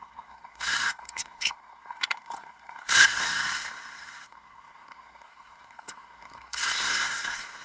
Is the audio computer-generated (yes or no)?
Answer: yes